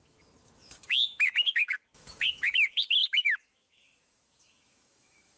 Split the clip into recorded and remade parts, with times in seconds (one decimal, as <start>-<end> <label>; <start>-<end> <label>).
0.0-5.4 remade